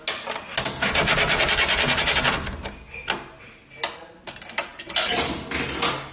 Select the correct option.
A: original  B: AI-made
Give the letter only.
A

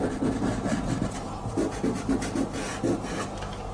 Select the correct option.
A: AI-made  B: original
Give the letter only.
B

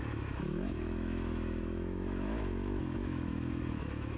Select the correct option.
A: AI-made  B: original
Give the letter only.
A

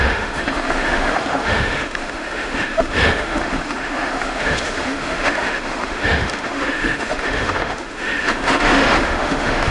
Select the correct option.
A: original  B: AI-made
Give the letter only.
B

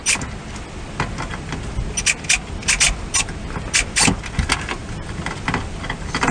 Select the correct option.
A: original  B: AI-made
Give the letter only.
A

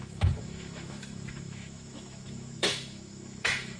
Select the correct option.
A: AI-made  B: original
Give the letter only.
A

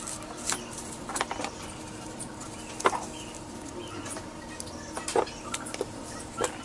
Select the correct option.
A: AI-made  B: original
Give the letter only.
B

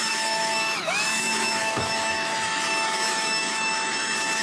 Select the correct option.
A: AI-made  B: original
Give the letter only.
A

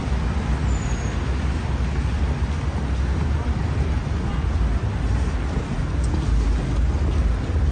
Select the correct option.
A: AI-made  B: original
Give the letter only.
B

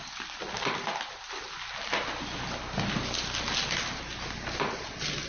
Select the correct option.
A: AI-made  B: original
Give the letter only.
B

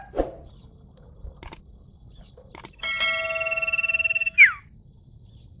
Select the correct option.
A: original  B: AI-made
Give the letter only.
A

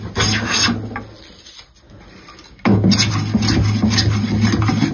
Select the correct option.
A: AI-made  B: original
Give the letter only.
B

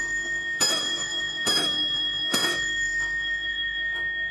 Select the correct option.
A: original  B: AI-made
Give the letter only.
B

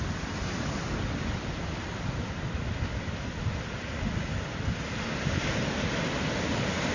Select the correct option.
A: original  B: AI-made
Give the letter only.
A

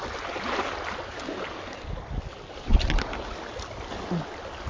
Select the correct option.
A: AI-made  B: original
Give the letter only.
B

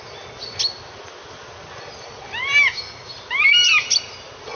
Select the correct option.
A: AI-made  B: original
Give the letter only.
B